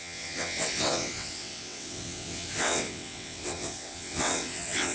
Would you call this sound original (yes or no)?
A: no